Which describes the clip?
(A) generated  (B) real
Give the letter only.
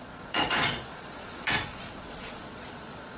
A